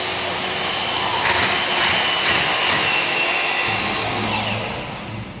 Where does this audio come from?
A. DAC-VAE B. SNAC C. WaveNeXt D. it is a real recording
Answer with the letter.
D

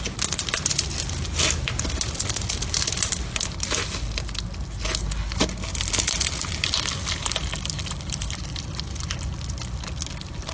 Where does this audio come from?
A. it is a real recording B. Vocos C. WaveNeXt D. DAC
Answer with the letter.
A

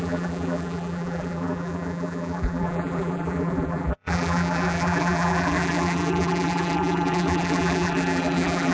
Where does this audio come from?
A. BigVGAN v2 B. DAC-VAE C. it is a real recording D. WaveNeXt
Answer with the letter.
A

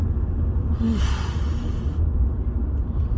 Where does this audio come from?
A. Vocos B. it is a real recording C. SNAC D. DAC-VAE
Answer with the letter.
B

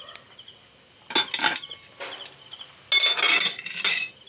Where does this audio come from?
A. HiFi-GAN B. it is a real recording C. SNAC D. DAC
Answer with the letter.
B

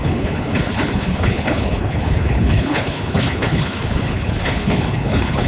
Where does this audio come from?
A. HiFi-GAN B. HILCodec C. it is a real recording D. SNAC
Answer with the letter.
B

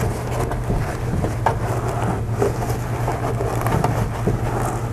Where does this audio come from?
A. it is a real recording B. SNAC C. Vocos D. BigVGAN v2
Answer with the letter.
A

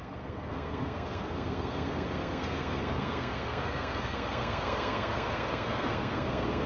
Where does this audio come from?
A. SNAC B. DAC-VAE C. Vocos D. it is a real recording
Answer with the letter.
A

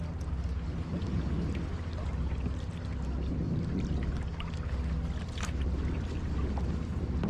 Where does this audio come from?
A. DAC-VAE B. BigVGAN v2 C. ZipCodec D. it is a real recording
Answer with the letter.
D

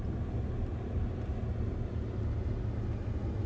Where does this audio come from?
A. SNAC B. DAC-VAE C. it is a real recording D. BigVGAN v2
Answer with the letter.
C